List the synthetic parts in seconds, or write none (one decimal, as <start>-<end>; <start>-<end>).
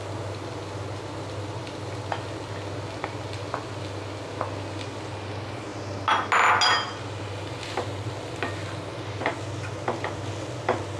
none